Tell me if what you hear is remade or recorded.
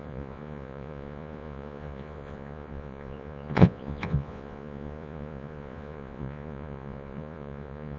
remade